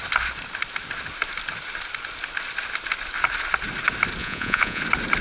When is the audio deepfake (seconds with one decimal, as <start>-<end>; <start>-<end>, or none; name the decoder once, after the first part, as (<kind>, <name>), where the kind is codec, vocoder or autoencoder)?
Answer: 4.2-4.8 (vocoder, Vocos)